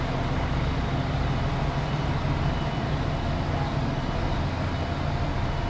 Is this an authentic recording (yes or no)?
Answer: yes